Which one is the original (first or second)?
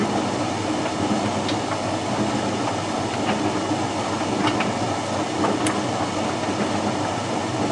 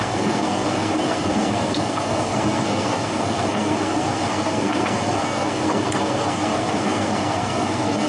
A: first